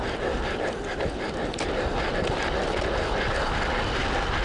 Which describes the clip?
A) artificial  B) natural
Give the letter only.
B